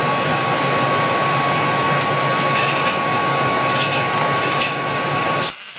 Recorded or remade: recorded